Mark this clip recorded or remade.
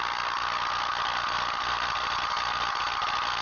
recorded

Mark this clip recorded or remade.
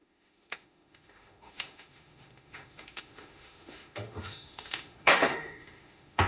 remade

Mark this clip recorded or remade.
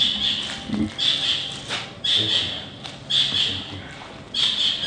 recorded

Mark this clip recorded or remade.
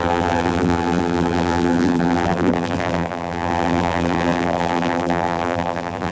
remade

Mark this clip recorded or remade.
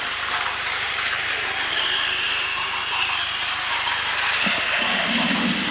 recorded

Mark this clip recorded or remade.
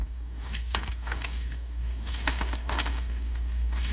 remade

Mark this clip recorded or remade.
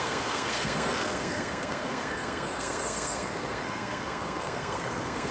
remade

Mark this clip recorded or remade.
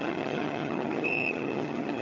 remade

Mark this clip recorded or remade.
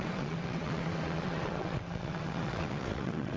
remade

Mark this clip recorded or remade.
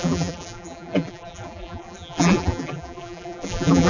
remade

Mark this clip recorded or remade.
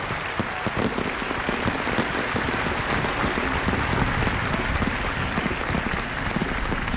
recorded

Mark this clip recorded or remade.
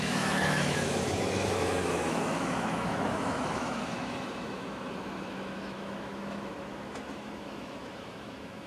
remade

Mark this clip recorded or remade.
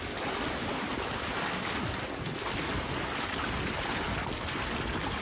recorded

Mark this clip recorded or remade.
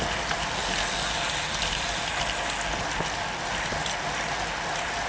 recorded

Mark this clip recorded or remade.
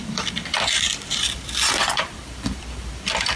remade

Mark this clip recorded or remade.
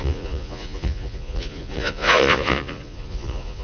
remade